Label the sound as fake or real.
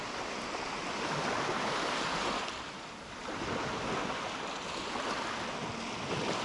real